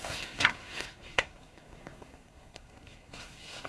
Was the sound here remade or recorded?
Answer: remade